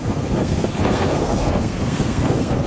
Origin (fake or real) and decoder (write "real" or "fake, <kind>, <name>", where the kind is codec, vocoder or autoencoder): fake, codec, SNAC